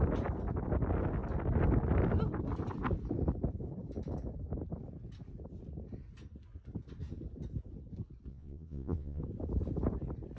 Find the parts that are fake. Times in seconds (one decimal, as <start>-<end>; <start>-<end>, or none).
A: 8.3-9.2